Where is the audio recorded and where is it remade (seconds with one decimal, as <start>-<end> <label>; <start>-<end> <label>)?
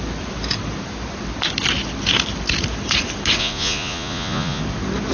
0.0-3.4 recorded; 3.4-4.6 remade; 4.6-5.1 recorded